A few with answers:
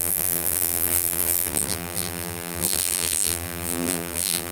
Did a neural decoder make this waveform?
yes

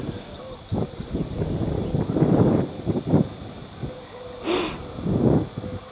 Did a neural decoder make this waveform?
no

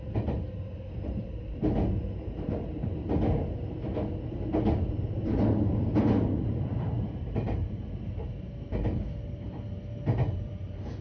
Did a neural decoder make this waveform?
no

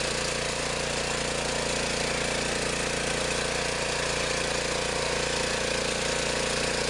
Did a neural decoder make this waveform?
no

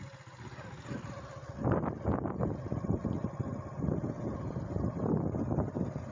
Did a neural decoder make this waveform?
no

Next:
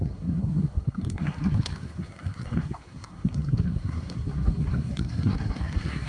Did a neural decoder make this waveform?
yes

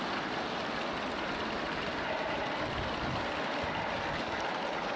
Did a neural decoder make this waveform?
no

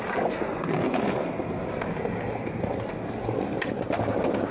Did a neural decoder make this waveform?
no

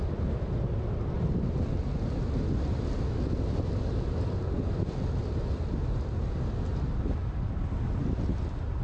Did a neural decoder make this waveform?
no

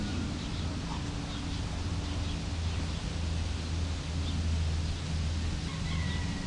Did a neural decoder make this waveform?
no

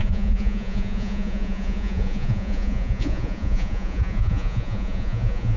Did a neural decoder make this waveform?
yes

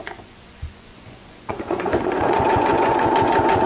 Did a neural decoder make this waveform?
yes